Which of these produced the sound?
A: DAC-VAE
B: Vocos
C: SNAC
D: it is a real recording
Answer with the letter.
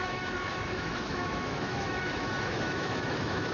A